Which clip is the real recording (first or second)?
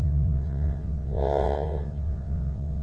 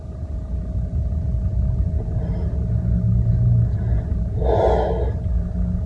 second